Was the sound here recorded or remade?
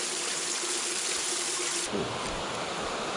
recorded